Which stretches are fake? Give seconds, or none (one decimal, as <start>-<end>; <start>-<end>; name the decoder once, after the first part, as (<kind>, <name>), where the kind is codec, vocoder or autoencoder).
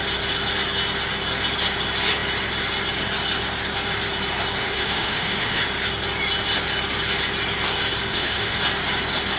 4.6-5.6 (autoencoder, DAC-VAE); 8.1-8.6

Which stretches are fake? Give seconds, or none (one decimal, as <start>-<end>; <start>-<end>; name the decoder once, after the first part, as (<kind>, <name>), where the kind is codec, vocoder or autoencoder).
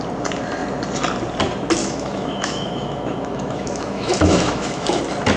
1.8-5.0 (autoencoder, DAC-VAE)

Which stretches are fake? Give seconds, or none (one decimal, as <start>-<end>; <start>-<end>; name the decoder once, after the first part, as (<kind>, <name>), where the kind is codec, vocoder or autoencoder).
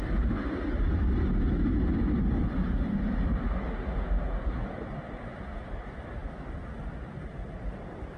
none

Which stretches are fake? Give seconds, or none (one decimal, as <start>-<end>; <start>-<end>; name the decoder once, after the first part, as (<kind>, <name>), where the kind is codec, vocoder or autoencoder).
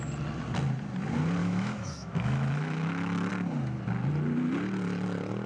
1.4-3.3 (autoencoder, DAC-VAE)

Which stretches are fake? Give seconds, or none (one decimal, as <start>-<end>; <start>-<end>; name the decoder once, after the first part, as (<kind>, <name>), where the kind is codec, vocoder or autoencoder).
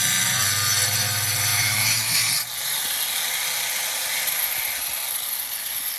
1.5-2.3 (autoencoder, DAC-VAE)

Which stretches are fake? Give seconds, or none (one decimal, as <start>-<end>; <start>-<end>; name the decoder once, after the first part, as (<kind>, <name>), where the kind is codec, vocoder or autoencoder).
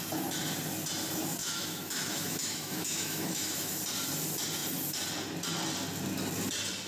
1.4-3.8 (autoencoder, DAC-VAE)